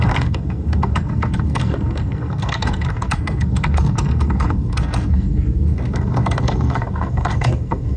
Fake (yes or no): yes